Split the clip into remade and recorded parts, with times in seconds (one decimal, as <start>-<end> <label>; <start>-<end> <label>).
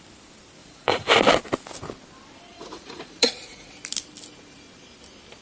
0.0-0.6 recorded; 0.6-1.1 remade; 1.1-2.5 recorded; 2.5-3.7 remade; 3.7-5.4 recorded